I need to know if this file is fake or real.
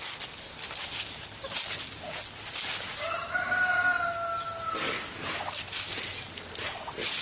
real